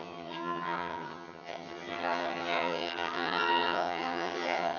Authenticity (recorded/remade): remade